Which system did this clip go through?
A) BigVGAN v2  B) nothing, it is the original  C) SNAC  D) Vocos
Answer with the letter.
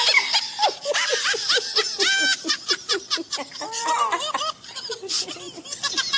B